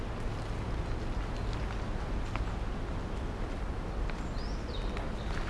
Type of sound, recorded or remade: recorded